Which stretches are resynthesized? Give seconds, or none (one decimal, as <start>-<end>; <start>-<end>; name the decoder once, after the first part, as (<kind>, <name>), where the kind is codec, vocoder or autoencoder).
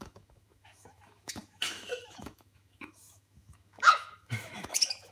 0.0-5.1 (autoencoder, DAC-VAE)